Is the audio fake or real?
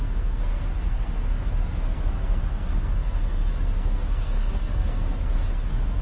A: fake